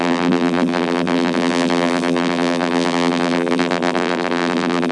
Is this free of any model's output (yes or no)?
no